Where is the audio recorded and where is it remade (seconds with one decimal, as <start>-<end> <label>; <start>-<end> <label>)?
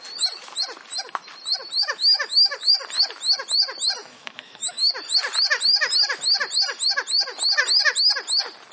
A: 0.0-1.8 recorded; 1.8-2.7 remade; 2.7-4.0 recorded; 4.0-4.9 remade; 4.9-8.7 recorded